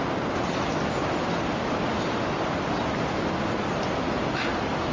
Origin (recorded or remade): recorded